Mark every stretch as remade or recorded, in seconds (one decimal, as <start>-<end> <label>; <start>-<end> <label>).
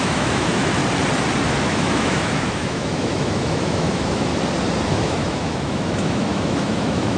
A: 0.0-0.8 remade; 0.8-1.6 recorded; 1.6-4.3 remade; 4.3-4.9 recorded; 4.9-7.2 remade